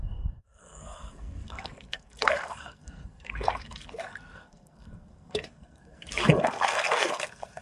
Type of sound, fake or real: fake